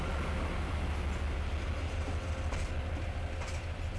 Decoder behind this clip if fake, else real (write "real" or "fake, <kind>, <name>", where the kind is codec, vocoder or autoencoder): real